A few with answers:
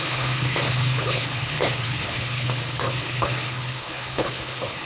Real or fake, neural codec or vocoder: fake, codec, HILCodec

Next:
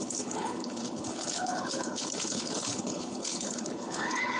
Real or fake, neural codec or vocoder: fake, codec, HILCodec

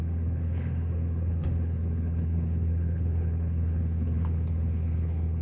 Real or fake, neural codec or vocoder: fake, codec, HILCodec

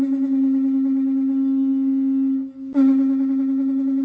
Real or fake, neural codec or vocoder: real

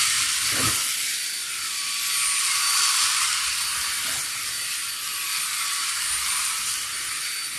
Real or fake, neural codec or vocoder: real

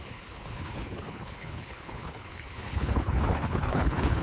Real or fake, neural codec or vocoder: fake, codec, HILCodec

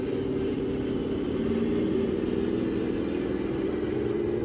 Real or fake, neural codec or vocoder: real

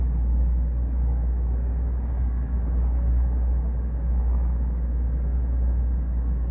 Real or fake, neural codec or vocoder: real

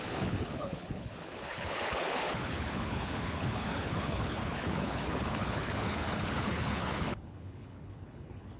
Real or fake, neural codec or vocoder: fake, codec, HILCodec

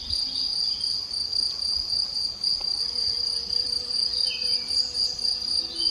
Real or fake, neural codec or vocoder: real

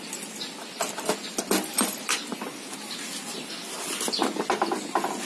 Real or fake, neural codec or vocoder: real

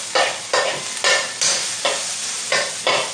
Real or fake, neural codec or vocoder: real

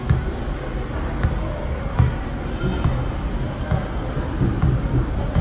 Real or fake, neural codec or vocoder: real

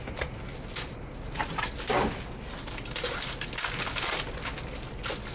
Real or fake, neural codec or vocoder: real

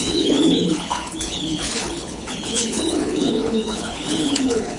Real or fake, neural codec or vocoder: fake, codec, HILCodec